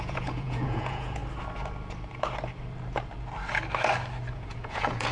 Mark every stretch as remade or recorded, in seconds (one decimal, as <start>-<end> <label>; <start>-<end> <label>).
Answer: 0.0-1.2 remade; 1.2-4.3 recorded; 4.3-5.1 remade